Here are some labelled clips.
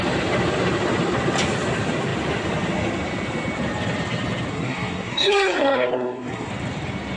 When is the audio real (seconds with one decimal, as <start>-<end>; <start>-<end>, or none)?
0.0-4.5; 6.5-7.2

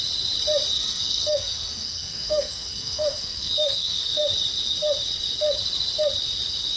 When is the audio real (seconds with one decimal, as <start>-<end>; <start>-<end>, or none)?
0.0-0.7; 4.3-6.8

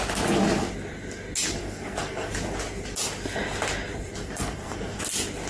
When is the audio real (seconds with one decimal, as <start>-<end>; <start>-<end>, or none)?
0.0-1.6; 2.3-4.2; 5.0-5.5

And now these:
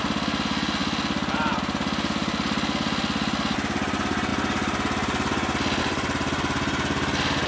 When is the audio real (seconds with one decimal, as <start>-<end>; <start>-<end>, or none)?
0.0-7.5

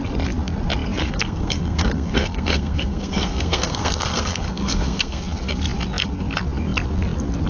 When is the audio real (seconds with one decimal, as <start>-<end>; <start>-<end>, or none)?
0.0-1.0; 5.2-7.5